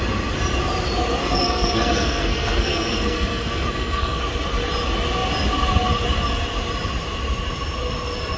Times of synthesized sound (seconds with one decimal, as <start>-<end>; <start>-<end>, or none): 1.1-4.2